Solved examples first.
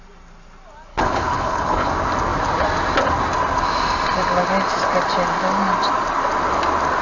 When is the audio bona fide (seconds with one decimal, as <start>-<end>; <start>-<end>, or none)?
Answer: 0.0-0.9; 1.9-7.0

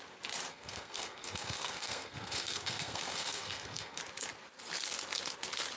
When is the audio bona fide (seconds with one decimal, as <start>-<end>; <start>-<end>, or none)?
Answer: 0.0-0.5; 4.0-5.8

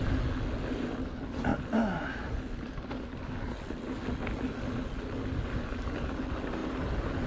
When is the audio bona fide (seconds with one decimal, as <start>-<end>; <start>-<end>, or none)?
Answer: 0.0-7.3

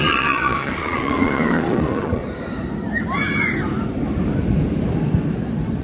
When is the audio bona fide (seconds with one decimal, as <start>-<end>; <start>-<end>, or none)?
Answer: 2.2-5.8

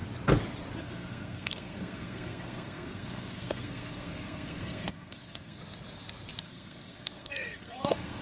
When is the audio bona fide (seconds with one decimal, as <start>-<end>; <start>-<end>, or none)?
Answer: 0.0-0.8; 5.6-6.4